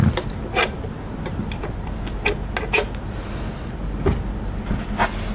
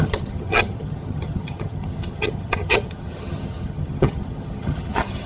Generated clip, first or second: second